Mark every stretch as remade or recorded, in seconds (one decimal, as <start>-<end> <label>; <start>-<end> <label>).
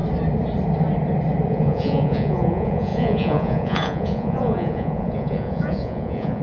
0.0-1.5 recorded; 1.5-6.4 remade